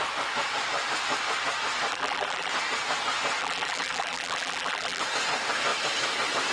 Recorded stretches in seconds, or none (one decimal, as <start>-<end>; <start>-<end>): 0.0-1.9; 2.5-3.4; 5.0-6.5